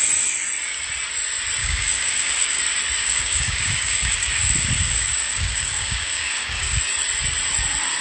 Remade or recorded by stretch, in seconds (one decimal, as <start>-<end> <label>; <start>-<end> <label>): 0.0-1.6 recorded; 1.6-2.6 remade; 2.6-3.0 recorded; 3.0-6.8 remade; 6.8-8.0 recorded